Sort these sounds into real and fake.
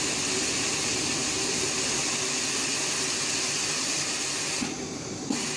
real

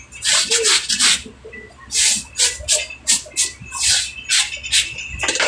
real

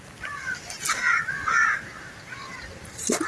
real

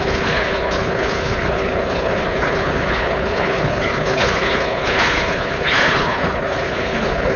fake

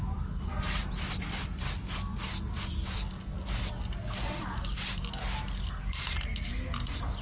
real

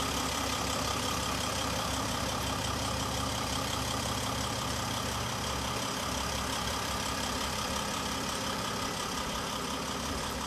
fake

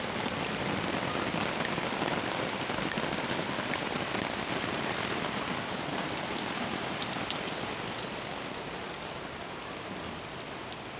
real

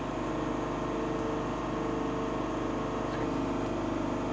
real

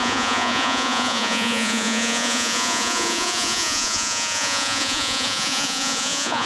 fake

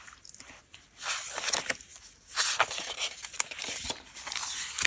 real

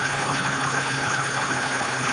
fake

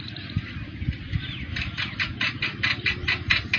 real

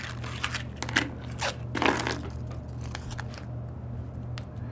real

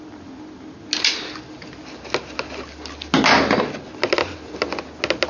real